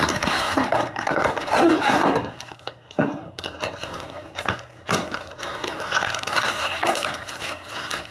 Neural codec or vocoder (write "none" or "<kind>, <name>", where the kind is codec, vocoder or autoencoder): codec, SNAC